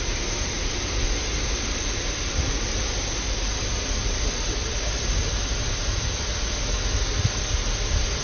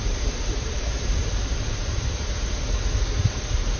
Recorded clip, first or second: first